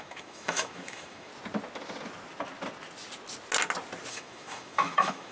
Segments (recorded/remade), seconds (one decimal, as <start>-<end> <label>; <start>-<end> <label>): 0.0-1.3 remade; 1.3-4.1 recorded; 4.1-5.3 remade